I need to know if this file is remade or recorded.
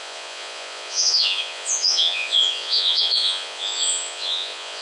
remade